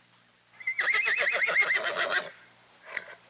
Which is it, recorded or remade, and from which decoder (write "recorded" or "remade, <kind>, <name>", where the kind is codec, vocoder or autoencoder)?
recorded